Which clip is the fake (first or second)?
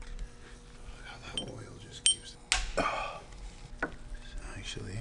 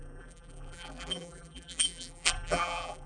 second